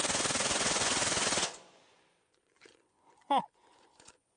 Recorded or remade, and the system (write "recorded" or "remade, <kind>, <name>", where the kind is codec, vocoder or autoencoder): remade, vocoder, Vocos